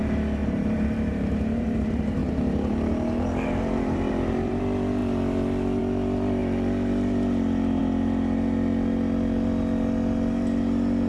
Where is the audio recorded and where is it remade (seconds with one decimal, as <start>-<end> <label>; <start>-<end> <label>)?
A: 0.0-0.4 recorded; 0.4-1.8 remade; 1.8-2.2 recorded; 2.2-4.6 remade; 4.6-11.1 recorded